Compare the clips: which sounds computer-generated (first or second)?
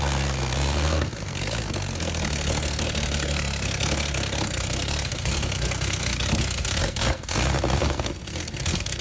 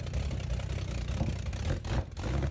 first